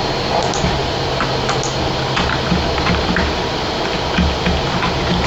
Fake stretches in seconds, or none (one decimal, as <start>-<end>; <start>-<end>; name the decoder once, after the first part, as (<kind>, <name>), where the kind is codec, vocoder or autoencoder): none